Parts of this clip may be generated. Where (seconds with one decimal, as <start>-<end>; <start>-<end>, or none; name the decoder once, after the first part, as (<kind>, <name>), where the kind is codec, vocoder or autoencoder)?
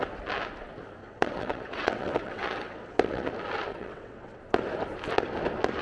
1.0-3.3 (vocoder, WaveNeXt); 3.7-4.4